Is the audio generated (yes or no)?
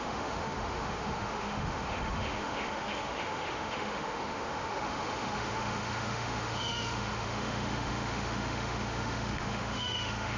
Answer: yes